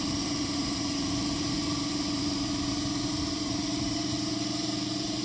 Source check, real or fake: fake